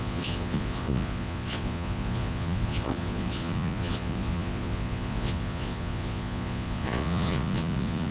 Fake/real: fake